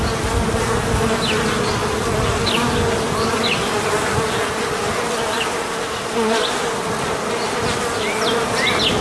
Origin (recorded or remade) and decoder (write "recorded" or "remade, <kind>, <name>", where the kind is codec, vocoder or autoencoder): recorded